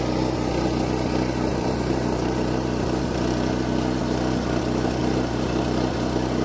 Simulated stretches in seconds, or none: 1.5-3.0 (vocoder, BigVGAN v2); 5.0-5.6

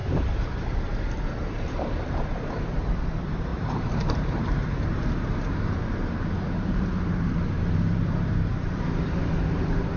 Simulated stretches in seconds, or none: 0.0-9.2 (vocoder, BigVGAN v2)

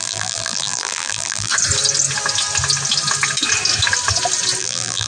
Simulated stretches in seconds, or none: 0.0-1.5 (vocoder, BigVGAN v2); 4.6-5.1

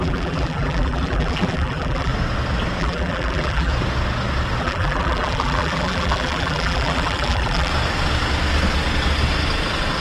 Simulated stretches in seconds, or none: 0.0-2.1 (vocoder, BigVGAN v2); 2.8-3.7; 4.6-7.7

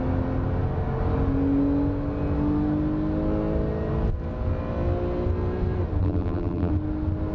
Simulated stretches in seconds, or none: 6.0-6.7 (vocoder, BigVGAN v2)